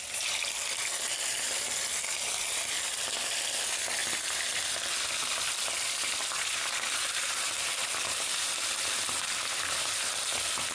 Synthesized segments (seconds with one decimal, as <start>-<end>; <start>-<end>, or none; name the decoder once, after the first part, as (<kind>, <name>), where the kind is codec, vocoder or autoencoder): none